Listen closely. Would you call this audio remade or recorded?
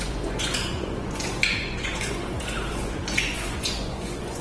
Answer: remade